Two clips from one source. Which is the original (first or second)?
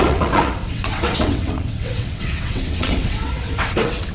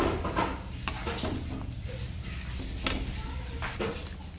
second